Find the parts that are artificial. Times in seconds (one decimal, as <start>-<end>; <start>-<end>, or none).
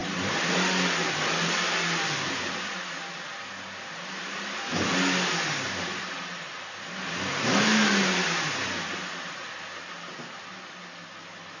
0.0-0.5